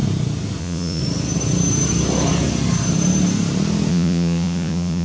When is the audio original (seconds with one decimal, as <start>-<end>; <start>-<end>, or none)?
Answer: 0.0-0.6; 1.0-3.9